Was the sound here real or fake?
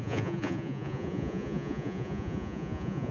fake